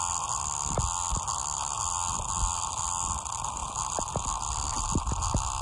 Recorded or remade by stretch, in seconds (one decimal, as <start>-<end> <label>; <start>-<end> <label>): 0.0-5.6 recorded